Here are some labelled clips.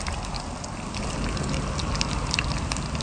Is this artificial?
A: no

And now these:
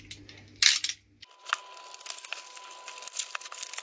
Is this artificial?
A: no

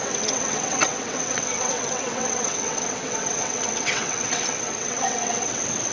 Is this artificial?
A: yes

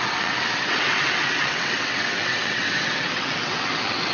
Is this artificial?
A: yes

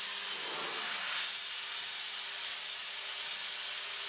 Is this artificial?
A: no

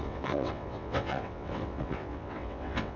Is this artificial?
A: yes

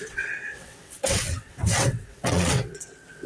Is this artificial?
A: yes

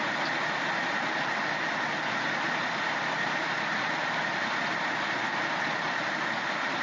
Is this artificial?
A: no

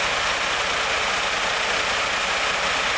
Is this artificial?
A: no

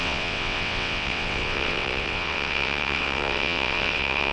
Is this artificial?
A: yes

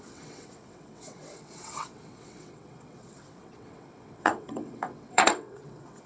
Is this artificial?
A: yes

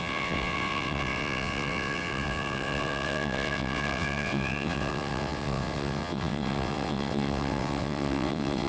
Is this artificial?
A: yes